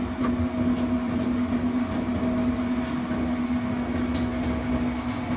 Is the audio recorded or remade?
recorded